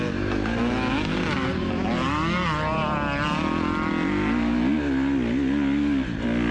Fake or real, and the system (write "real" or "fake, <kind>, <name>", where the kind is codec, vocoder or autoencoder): real